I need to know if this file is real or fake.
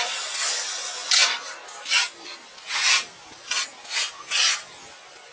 real